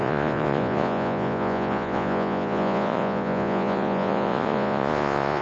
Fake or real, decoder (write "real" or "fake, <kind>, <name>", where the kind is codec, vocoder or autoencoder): fake, vocoder, Vocos